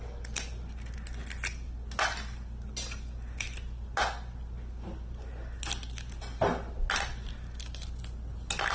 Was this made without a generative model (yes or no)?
yes